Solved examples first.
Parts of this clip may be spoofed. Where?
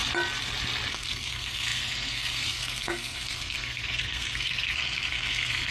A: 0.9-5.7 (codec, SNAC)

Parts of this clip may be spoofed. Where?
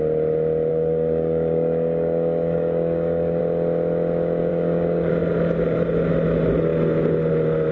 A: 0.7-3.4 (codec, DAC); 4.5-5.1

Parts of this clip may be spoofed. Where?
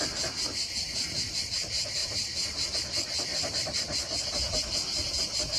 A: 2.0-2.7 (vocoder, BigVGAN v2); 3.3-4.5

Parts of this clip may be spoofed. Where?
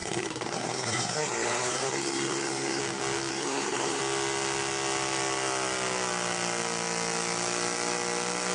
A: 0.0-2.8 (codec, SNAC); 3.3-4.0